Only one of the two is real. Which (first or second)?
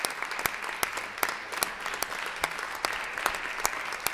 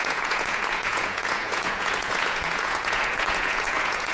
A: first